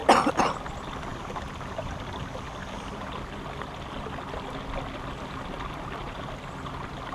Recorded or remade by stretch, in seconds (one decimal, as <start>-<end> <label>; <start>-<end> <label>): 0.0-7.1 recorded